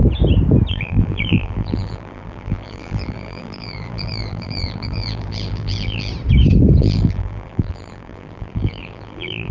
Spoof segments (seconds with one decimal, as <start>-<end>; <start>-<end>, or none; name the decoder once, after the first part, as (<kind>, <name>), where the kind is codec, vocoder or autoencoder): 0.7-6.1 (vocoder, BigVGAN v2); 6.8-9.5